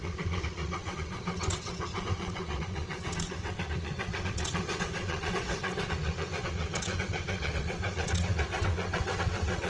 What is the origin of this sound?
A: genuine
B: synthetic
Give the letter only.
B